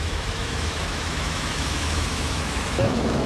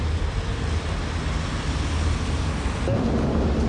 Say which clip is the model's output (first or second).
first